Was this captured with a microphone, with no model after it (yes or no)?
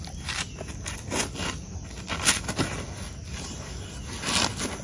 yes